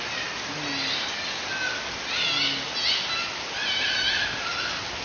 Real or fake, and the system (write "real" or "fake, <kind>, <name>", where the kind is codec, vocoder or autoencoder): real